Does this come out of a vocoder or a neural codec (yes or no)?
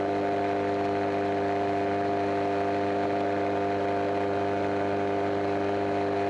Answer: no